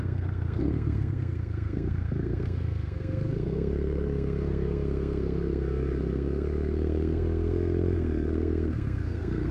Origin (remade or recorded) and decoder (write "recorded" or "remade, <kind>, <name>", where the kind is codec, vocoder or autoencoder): remade, codec, SNAC